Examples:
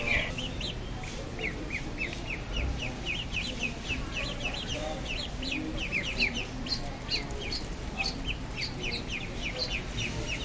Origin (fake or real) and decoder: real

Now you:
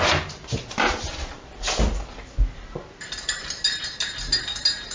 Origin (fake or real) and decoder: real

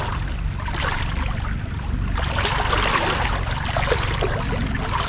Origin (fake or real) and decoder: real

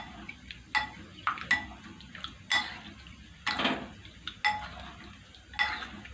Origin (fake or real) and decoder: real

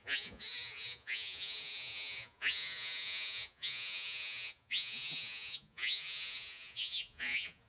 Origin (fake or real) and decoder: fake, vocoder, Vocos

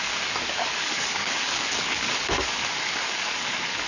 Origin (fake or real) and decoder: fake, codec, DAC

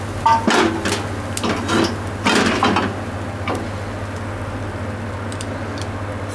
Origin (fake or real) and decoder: real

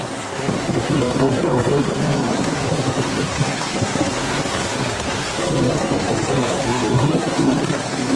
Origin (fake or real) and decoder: fake, codec, SNAC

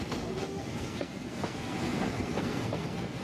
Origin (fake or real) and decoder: fake, codec, SNAC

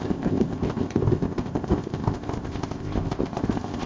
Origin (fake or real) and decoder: fake, codec, ZipCodec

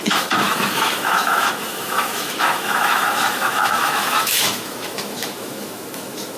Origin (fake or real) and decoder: fake, autoencoder, DAC-VAE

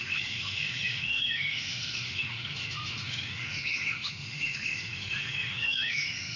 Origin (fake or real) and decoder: fake, autoencoder, DAC-VAE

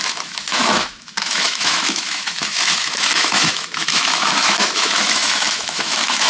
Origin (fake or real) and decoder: fake, autoencoder, DAC-VAE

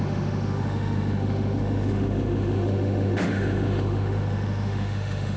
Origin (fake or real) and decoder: fake, autoencoder, DAC-VAE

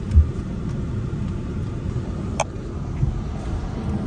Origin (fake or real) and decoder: real